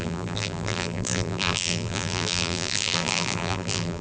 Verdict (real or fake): fake